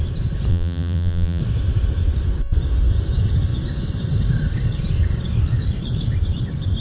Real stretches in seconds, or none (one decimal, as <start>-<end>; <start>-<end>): 0.0-0.5; 1.4-6.8